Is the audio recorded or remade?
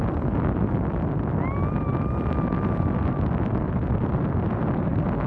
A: recorded